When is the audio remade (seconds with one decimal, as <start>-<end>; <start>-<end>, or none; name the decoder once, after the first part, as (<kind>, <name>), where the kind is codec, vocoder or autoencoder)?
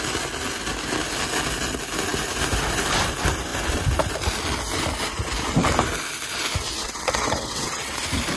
6.8-8.0 (vocoder, WaveNeXt)